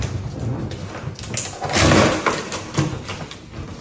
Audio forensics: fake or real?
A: real